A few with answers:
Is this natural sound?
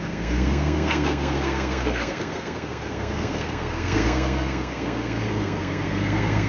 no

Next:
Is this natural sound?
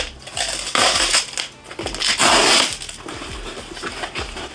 yes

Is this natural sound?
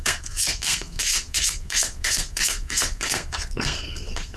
no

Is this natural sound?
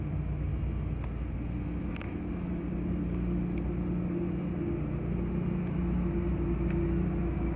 yes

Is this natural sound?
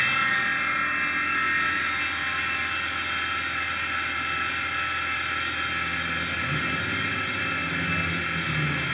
yes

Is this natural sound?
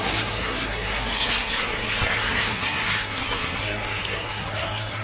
no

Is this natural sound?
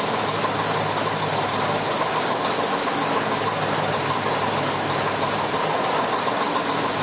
yes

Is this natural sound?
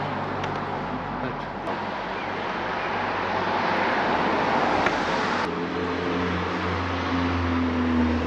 yes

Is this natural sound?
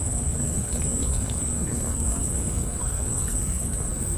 no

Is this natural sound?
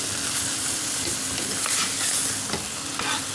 yes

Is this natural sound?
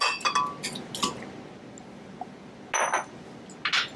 yes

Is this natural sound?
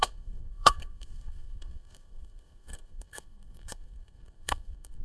no